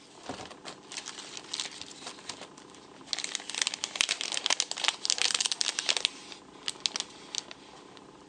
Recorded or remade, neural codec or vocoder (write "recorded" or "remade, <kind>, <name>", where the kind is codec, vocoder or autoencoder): recorded